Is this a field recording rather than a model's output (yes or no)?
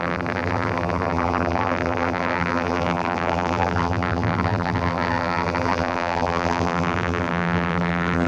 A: no